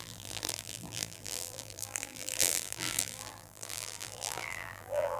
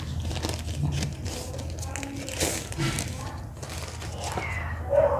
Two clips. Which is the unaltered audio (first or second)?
second